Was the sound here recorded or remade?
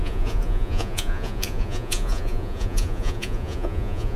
remade